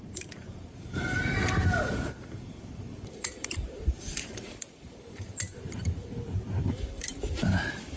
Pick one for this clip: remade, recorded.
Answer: remade